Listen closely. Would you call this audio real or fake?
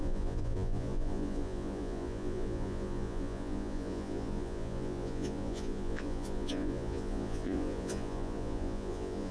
fake